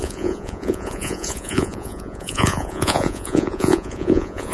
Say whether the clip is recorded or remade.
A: remade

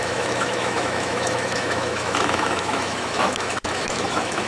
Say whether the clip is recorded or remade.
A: remade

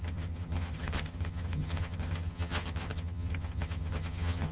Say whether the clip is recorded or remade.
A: remade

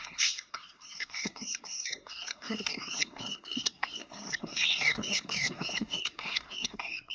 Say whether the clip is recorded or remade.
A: remade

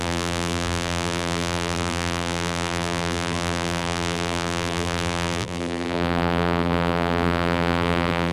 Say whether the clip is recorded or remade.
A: remade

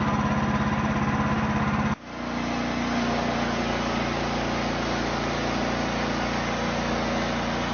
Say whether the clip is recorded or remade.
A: recorded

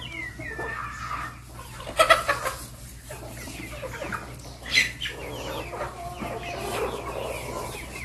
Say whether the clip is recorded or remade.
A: recorded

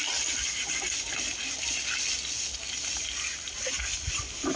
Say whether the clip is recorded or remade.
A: recorded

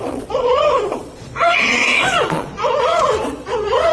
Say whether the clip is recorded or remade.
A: remade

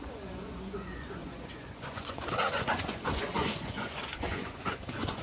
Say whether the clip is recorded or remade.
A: remade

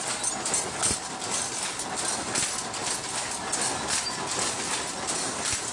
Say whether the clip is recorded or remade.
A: recorded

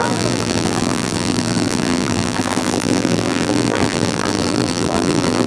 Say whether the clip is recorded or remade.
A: remade